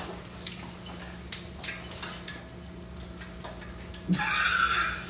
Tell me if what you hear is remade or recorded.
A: recorded